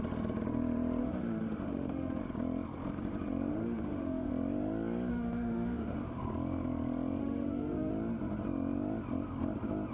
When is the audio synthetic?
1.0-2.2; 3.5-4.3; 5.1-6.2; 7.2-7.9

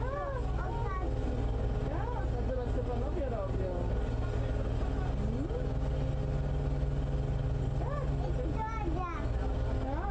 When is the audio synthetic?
none